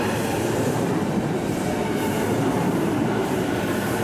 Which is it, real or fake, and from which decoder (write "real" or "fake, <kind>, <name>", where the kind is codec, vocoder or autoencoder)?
fake, vocoder, BigVGAN v2